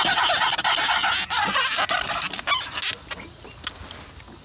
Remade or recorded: recorded